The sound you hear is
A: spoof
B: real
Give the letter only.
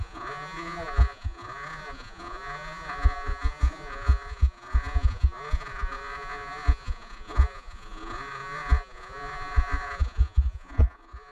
A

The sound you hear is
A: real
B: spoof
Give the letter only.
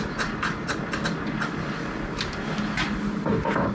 A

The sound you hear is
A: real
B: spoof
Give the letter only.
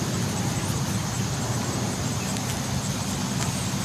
A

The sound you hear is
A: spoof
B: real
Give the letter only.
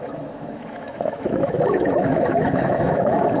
A